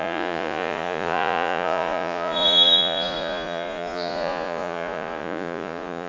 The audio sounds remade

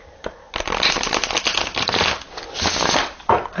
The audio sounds recorded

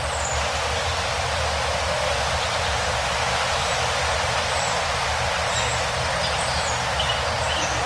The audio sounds recorded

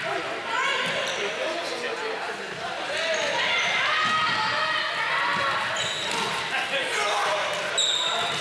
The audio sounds recorded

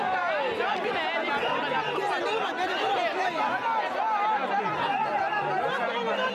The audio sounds recorded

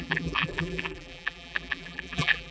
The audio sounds remade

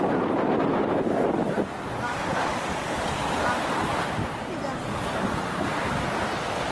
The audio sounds recorded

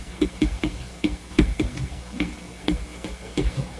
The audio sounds remade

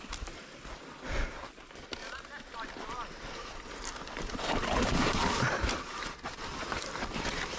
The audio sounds recorded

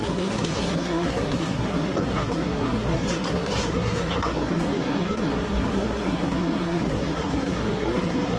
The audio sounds remade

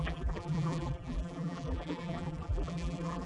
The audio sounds remade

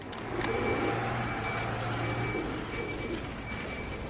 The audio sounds recorded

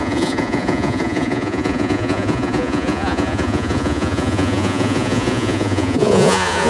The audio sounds remade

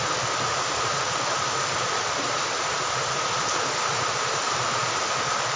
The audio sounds recorded